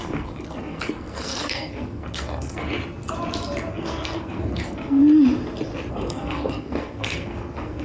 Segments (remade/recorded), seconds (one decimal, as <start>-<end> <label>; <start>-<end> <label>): 0.0-2.6 remade; 2.6-3.7 recorded; 3.7-5.0 remade; 5.0-5.9 recorded; 5.9-7.8 remade